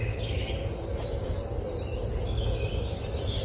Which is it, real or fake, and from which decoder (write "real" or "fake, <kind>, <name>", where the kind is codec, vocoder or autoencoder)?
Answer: real